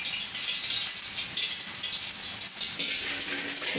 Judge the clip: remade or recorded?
recorded